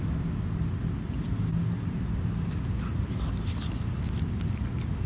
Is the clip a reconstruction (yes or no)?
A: no